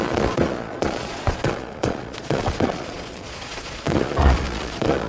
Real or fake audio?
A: fake